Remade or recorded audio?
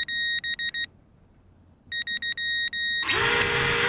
recorded